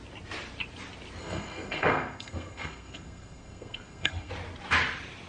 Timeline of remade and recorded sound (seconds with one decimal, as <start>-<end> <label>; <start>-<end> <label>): 0.0-1.2 recorded; 1.2-4.3 remade; 4.3-5.3 recorded